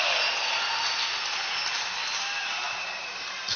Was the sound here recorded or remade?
recorded